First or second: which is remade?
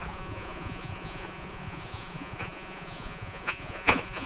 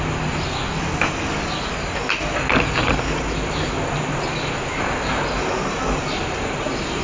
first